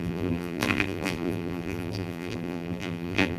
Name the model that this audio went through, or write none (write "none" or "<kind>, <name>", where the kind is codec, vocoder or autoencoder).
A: vocoder, BigVGAN v2